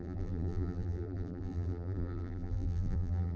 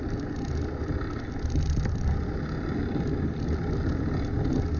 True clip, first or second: second